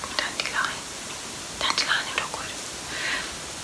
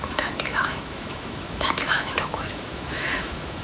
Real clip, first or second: first